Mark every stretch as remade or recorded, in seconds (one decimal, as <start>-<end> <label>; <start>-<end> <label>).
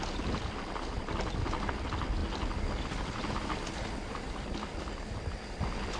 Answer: 0.0-6.0 recorded